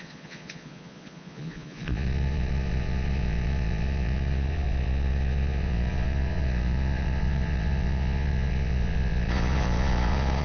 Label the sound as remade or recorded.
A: remade